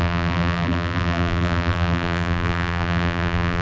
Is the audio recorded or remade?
remade